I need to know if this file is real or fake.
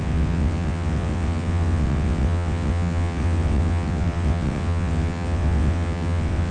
fake